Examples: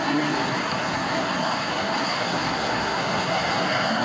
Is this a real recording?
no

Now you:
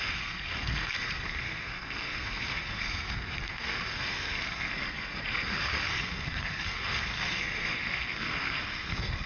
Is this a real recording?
no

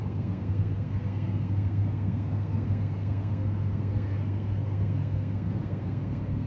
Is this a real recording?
no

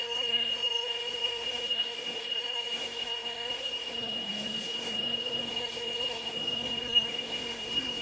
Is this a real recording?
no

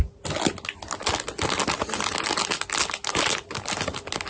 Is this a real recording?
yes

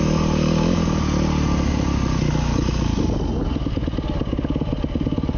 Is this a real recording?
yes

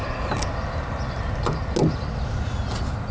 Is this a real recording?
yes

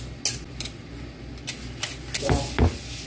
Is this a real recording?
yes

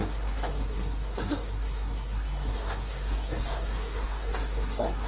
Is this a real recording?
no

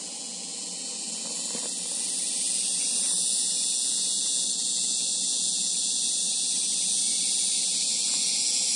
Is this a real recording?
yes